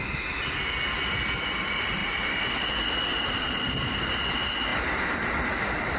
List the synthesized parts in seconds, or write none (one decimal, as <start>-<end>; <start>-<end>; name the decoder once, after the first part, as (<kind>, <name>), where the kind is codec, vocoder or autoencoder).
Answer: 2.0-2.6 (vocoder, BigVGAN v2); 3.1-4.0; 4.7-5.3